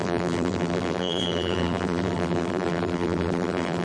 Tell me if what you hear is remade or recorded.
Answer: remade